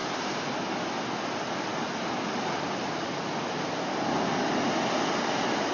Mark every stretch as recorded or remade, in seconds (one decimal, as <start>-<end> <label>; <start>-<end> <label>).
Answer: 0.0-5.7 recorded